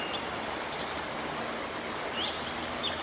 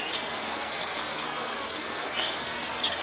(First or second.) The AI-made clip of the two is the second